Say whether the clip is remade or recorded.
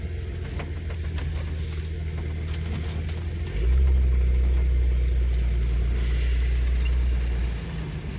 recorded